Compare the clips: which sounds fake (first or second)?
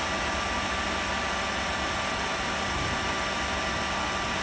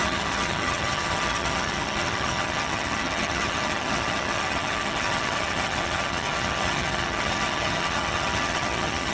second